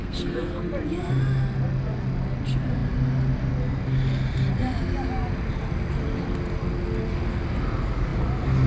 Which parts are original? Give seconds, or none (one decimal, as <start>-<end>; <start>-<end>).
0.6-8.7